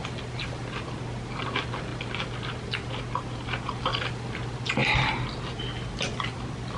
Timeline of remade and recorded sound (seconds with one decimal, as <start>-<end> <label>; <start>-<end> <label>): 0.0-6.8 recorded